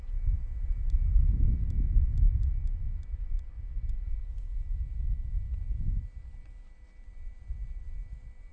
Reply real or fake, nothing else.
real